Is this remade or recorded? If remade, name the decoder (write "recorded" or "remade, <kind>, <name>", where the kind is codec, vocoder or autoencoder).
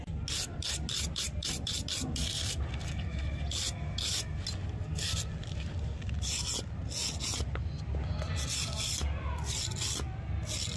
recorded